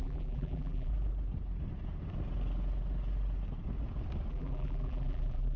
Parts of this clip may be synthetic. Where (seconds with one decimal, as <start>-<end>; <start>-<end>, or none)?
0.0-0.9; 4.3-5.6